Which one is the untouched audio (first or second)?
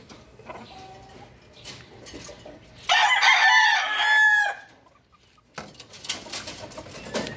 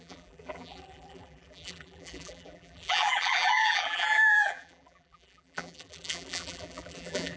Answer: first